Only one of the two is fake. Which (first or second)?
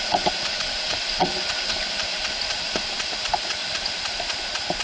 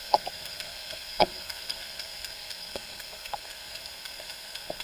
second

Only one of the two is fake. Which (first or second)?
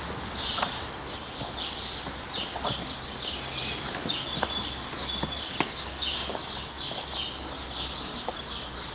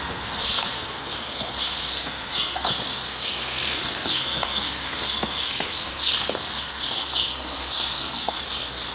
second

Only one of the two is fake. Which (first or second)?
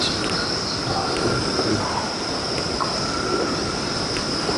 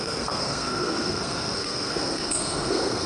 second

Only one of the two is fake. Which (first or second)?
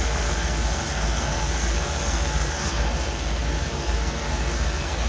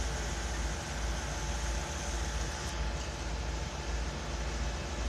first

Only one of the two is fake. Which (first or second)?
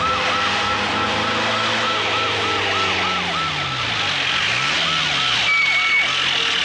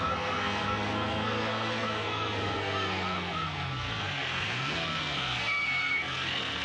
second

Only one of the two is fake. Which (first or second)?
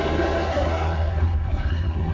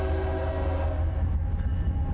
first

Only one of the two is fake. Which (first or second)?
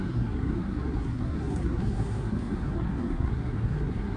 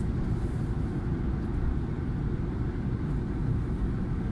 first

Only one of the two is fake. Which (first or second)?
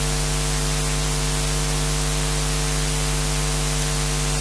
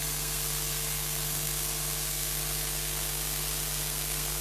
second